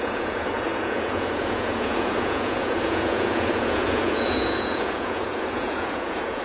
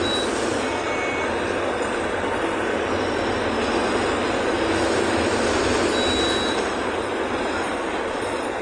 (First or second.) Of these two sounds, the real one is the second